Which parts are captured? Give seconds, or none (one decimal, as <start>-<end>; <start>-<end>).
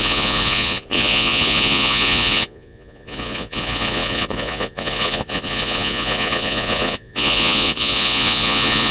none